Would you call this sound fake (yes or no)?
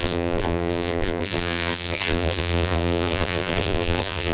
yes